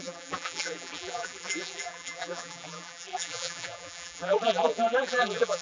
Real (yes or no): no